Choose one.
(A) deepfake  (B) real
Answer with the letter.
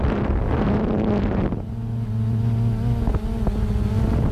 B